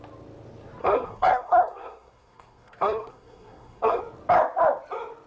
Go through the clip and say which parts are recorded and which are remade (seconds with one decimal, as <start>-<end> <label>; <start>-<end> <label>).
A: 0.0-0.8 recorded; 0.8-4.0 remade; 4.0-5.3 recorded